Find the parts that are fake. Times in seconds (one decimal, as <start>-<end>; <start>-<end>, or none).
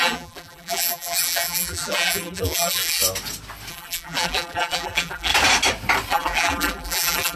0.0-3.0; 3.7-5.3; 6.1-7.4